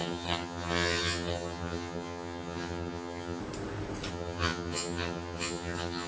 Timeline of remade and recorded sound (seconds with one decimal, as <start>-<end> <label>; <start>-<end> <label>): 0.0-3.4 remade; 3.4-4.1 recorded; 4.1-6.1 remade